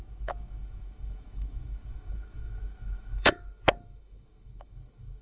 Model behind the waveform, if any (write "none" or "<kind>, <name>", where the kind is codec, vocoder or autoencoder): autoencoder, DAC-VAE